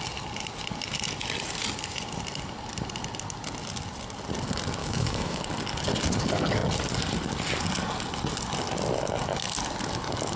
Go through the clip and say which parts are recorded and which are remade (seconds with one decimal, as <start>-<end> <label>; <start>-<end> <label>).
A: 0.0-4.8 recorded; 4.8-5.4 remade; 5.4-10.4 recorded